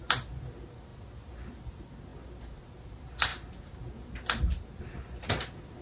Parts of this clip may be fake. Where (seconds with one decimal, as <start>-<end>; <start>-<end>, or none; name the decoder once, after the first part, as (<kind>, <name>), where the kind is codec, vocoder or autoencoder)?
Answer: none